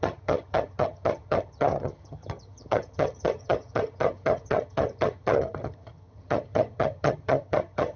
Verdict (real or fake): fake